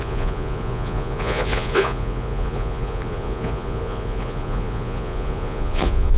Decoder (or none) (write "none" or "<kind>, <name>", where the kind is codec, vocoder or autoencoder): vocoder, Vocos